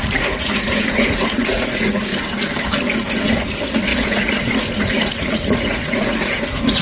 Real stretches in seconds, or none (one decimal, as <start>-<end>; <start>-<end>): 2.1-2.9